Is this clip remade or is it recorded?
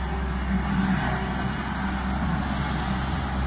recorded